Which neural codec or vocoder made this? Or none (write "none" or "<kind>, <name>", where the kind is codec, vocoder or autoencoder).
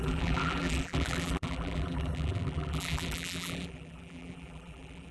vocoder, BigVGAN v2